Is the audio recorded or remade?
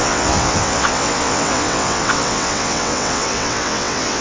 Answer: remade